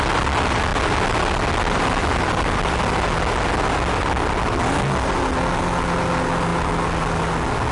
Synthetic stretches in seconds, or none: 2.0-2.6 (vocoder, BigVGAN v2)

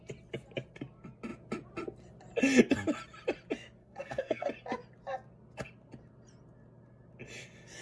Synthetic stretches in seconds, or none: 3.8-4.5 (codec, SNAC)

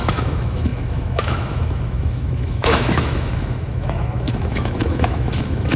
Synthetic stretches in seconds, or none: 0.0-5.8 (autoencoder, DAC-VAE)

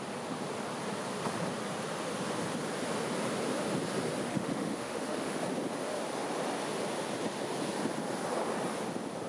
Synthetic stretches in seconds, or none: 4.3-5.4 (autoencoder, DAC-VAE)

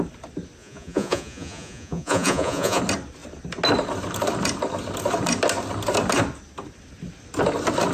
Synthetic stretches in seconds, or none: 0.6-2.8 (vocoder, Vocos)